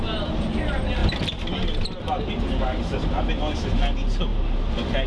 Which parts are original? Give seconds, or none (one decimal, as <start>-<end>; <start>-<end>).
0.0-5.1